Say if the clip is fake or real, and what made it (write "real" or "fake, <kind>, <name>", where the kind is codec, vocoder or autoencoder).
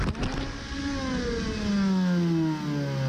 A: real